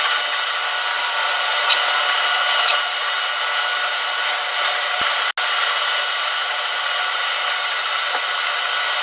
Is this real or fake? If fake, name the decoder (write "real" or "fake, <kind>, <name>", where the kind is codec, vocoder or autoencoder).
real